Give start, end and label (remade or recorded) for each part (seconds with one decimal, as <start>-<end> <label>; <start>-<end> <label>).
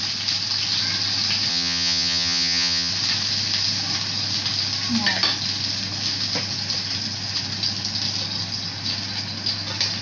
0.0-1.5 recorded; 1.5-2.9 remade; 2.9-10.0 recorded